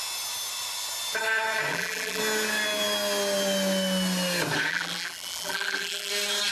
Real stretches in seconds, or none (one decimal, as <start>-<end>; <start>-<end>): 0.0-1.7; 2.2-4.7; 6.1-6.5